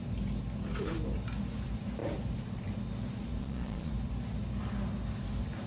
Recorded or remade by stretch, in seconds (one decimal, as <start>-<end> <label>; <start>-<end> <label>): 0.0-3.4 recorded; 3.4-3.9 remade; 3.9-5.7 recorded